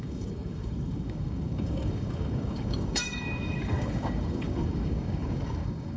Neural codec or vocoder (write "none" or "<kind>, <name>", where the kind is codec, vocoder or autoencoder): codec, DAC